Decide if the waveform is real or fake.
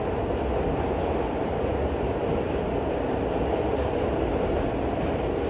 real